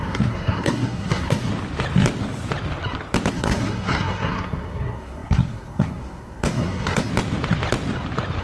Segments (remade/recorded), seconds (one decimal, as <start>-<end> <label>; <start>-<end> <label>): 0.0-1.5 remade; 1.5-3.3 recorded; 3.3-7.1 remade; 7.1-8.4 recorded